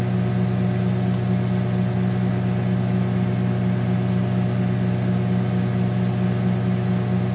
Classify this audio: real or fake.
real